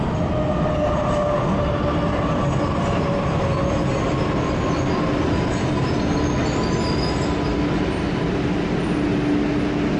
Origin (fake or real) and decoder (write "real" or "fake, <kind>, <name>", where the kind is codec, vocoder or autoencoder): real